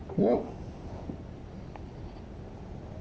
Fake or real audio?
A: real